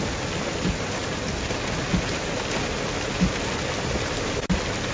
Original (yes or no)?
yes